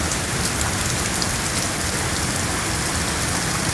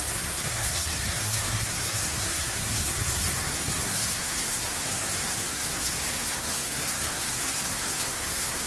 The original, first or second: first